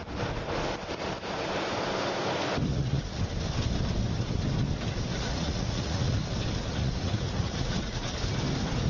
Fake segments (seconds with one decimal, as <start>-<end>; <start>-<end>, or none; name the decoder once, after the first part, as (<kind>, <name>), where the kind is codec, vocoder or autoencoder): 2.7-3.2 (vocoder, Vocos); 5.1-6.2; 6.7-8.1